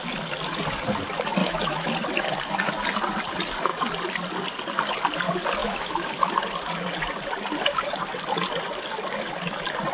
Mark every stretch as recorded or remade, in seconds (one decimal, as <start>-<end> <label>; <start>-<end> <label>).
0.0-1.4 recorded; 1.4-1.9 remade; 1.9-5.6 recorded; 5.6-6.3 remade; 6.3-9.9 recorded